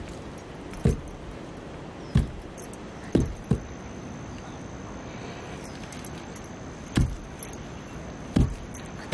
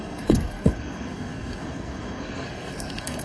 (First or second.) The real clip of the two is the first